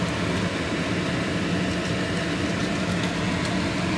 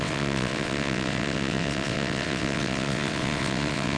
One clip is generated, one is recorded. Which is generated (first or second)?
second